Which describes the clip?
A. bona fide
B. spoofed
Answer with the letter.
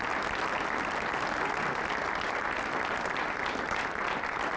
A